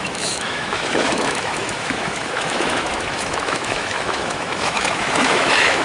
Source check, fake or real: fake